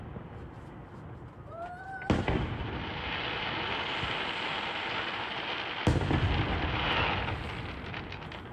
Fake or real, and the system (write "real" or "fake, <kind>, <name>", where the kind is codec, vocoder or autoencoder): real